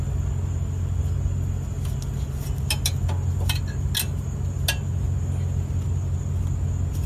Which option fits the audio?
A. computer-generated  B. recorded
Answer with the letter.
B